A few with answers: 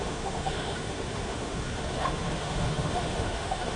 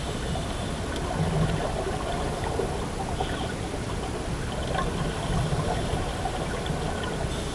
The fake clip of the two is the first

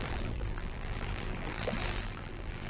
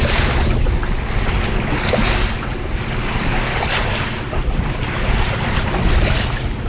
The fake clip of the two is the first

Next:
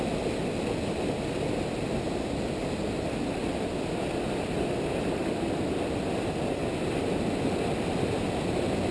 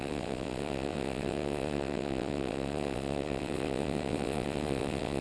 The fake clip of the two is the second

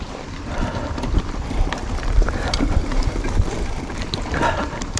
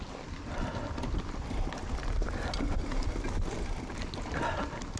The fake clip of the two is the first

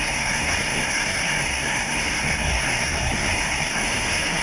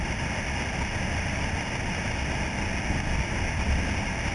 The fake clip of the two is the first